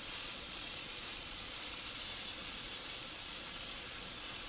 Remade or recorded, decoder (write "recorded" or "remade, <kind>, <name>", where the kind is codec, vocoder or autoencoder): remade, vocoder, Vocos